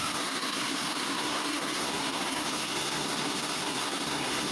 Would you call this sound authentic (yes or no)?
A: no